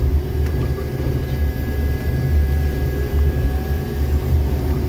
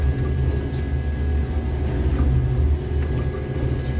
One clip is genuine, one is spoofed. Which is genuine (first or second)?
second